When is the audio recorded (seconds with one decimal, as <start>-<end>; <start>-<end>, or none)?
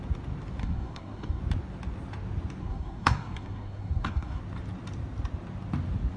0.0-0.6; 1.4-2.6; 4.4-6.2